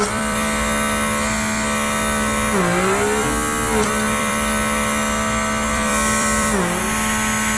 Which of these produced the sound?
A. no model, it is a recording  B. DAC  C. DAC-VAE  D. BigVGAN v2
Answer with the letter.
D